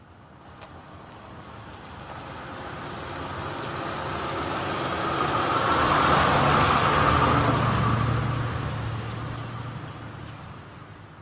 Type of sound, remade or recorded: recorded